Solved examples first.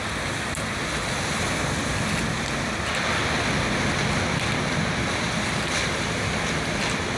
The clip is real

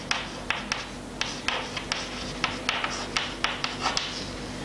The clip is real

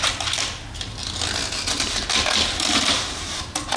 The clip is real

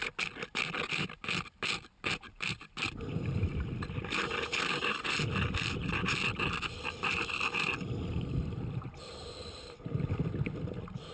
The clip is real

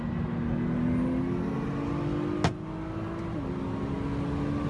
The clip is real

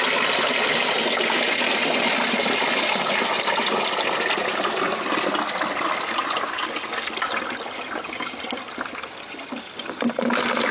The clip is real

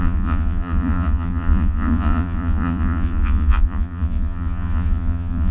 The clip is fake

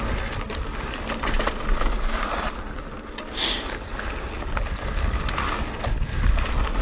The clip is real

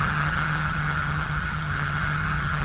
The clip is fake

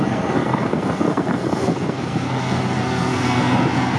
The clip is fake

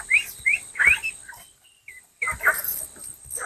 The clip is real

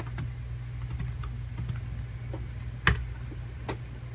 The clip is real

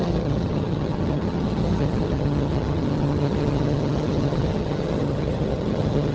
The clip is fake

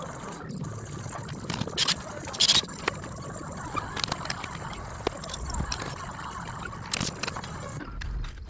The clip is real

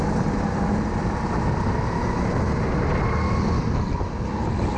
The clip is real